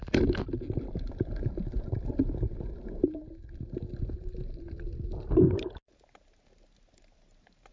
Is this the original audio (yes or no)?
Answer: yes